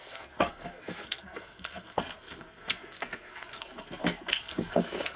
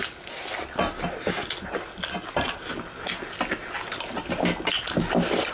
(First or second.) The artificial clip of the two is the first